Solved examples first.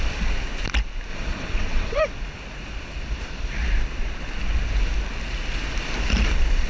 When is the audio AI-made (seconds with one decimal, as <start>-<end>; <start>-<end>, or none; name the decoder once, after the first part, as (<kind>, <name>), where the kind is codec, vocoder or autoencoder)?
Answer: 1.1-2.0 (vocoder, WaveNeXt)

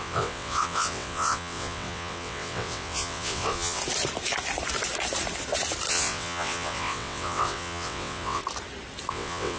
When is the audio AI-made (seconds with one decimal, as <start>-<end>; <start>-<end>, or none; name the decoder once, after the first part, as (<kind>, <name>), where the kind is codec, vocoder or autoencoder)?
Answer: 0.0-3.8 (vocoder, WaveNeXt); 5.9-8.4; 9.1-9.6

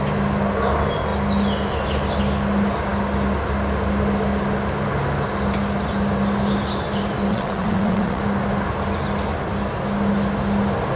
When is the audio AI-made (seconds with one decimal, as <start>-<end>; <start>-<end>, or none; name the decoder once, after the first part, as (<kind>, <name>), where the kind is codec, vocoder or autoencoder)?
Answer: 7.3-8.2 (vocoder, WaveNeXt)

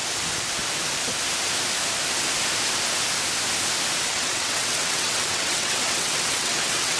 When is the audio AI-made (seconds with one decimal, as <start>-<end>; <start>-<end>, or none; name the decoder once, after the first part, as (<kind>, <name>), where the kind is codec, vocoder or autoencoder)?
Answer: 4.1-7.0 (vocoder, WaveNeXt)

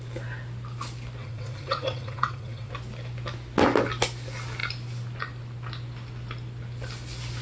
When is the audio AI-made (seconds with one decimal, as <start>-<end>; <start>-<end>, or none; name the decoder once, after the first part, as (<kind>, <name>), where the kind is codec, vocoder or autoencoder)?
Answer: 1.2-2.7 (vocoder, WaveNeXt)